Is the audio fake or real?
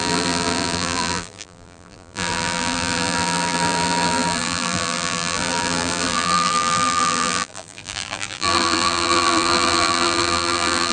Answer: fake